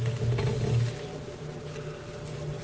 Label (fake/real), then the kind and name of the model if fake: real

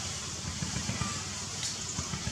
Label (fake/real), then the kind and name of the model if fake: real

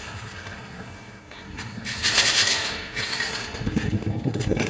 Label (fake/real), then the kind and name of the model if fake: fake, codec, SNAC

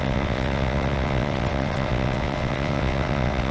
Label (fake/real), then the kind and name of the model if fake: fake, vocoder, WaveNeXt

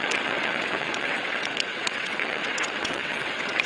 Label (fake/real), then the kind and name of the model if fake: fake, vocoder, WaveNeXt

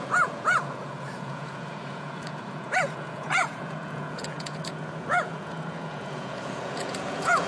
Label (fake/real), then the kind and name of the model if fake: fake, vocoder, Vocos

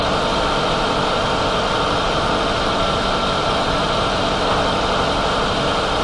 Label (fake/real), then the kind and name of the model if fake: real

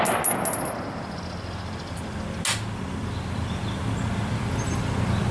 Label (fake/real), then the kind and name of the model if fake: real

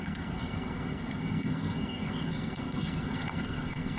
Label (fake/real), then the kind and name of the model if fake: fake, codec, SNAC